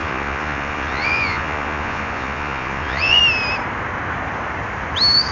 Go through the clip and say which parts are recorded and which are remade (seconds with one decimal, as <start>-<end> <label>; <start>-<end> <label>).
0.0-3.2 remade; 3.2-5.3 recorded